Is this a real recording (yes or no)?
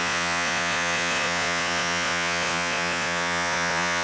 no